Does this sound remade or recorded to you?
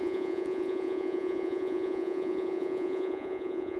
remade